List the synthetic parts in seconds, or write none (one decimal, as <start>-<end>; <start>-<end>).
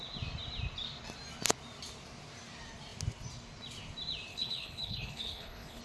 4.3-5.8